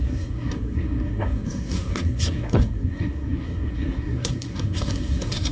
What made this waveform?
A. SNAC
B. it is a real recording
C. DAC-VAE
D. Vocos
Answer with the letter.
A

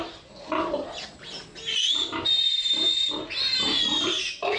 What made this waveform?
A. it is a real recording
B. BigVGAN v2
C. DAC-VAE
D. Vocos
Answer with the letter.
A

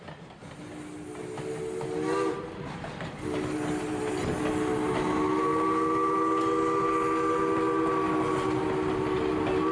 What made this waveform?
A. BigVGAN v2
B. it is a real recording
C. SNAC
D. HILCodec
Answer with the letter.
B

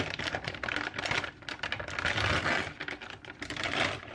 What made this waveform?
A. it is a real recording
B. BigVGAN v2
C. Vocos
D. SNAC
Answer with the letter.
A